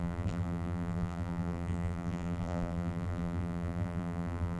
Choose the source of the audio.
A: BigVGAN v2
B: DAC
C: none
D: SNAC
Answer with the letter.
A